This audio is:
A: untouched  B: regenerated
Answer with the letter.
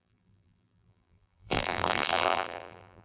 B